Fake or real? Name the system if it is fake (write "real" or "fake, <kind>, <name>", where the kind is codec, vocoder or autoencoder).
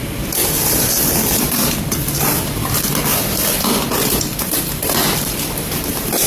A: fake, vocoder, BigVGAN v2